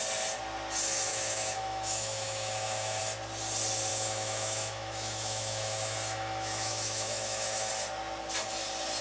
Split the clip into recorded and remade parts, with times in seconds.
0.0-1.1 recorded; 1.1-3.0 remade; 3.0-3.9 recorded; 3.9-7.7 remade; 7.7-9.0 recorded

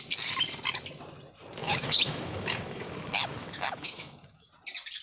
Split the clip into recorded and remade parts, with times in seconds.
0.0-1.6 recorded; 1.6-4.5 remade; 4.5-5.0 recorded

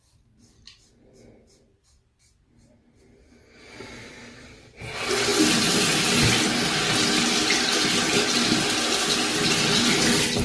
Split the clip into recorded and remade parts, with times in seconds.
0.0-10.4 recorded